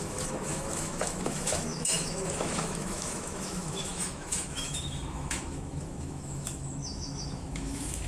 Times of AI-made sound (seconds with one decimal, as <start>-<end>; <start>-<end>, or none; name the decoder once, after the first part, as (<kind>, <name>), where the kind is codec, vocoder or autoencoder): 0.0-8.1 (autoencoder, DAC-VAE)